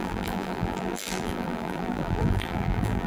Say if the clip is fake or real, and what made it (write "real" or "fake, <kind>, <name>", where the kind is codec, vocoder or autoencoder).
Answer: fake, vocoder, BigVGAN v2